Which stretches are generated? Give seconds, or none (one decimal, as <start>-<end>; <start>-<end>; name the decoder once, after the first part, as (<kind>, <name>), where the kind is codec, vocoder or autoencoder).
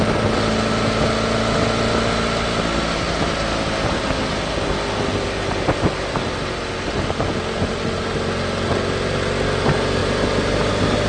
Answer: 10.0-10.7 (vocoder, BigVGAN v2)